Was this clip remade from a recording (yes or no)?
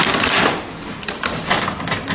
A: no